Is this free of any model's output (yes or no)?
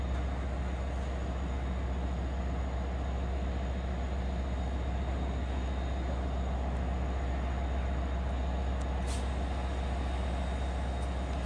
yes